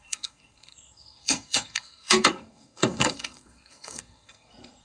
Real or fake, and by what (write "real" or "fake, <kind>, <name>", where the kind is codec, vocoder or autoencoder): fake, codec, SNAC